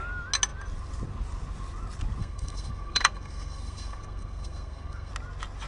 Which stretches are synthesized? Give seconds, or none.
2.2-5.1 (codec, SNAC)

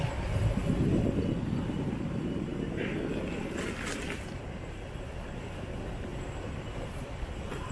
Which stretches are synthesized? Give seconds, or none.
0.0-0.6 (vocoder, BigVGAN v2); 1.5-2.5; 3.4-7.7

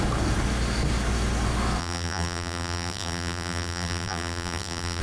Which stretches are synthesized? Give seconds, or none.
1.8-5.0 (vocoder, BigVGAN v2)

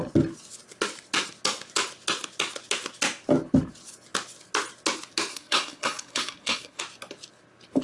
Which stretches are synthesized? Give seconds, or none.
5.3-6.8 (codec, SNAC)

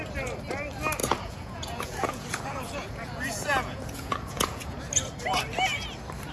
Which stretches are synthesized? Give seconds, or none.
1.0-4.8 (vocoder, Vocos)

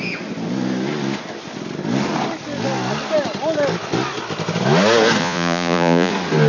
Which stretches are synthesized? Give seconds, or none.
5.2-6.1 (vocoder, Vocos)

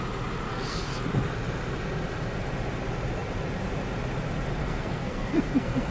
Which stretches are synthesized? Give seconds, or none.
0.5-1.0 (codec, SNAC); 4.6-5.9